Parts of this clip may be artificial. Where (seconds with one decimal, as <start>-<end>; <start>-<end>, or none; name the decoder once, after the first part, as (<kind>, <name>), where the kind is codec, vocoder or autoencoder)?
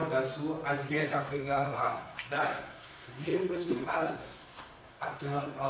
0.9-5.7 (codec, SNAC)